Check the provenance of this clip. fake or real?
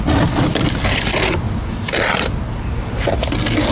real